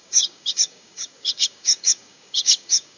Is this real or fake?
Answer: fake